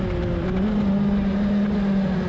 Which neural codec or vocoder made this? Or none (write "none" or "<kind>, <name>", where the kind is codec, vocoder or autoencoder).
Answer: none